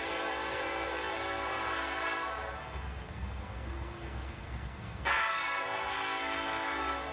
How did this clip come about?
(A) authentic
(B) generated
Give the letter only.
B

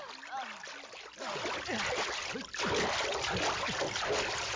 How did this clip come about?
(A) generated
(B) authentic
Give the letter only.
B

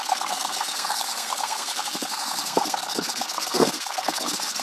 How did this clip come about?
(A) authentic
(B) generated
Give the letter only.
B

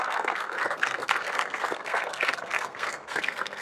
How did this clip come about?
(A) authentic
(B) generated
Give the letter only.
B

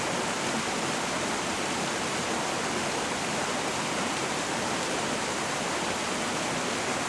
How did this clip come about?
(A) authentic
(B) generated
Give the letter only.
A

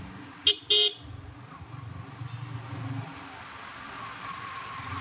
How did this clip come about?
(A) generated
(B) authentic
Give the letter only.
B